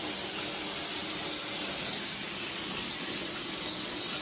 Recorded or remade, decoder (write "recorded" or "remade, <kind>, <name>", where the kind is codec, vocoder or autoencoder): recorded